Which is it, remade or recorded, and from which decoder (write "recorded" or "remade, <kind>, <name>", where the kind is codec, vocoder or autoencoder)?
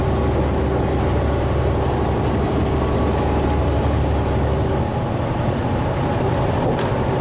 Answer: recorded